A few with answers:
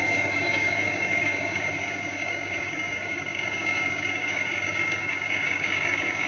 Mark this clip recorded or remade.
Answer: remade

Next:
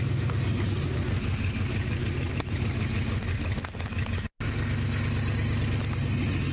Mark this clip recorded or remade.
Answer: recorded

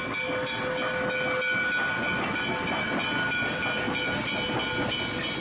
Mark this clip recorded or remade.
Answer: recorded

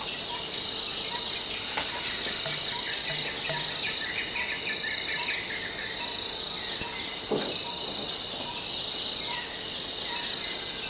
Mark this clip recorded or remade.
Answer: recorded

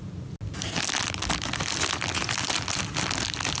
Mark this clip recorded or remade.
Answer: recorded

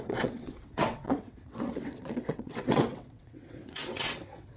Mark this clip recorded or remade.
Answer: remade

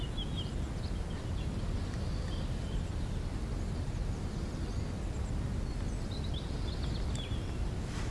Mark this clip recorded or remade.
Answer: recorded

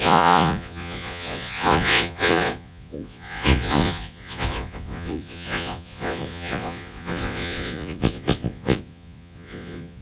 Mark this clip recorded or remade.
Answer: remade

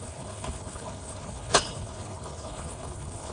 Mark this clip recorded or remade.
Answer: remade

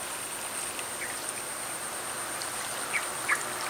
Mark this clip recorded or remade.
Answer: recorded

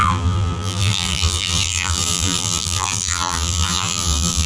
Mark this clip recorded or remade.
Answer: remade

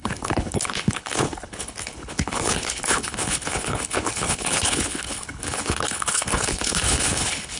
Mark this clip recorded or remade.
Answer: remade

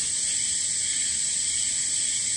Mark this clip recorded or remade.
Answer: recorded